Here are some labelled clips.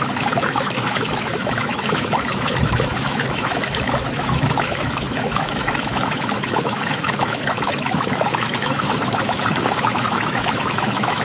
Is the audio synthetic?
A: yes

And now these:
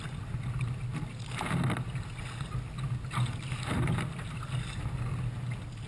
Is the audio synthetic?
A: no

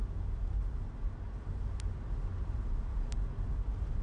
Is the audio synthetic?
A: no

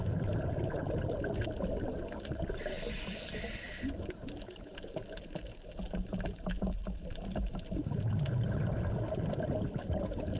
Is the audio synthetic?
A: no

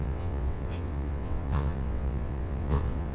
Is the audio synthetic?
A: yes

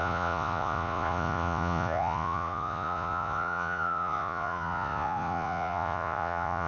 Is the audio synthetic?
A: yes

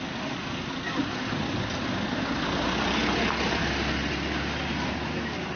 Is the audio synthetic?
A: no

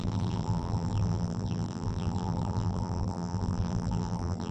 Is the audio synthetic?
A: yes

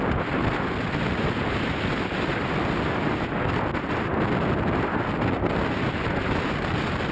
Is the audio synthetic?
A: no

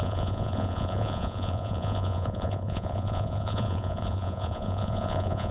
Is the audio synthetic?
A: yes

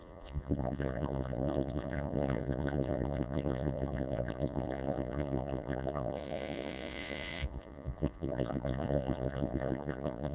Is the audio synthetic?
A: yes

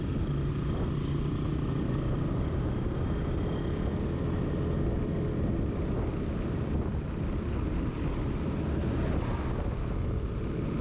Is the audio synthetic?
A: no